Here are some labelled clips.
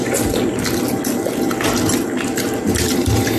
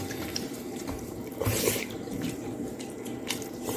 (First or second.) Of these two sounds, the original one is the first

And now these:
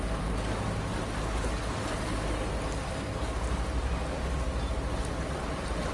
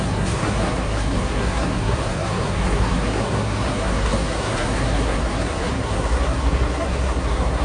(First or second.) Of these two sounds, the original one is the first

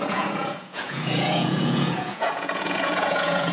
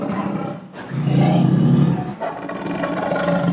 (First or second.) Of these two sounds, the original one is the second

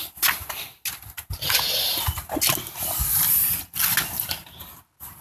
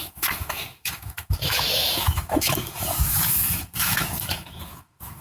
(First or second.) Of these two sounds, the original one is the first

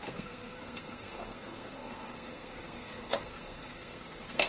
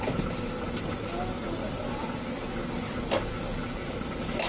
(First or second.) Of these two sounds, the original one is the second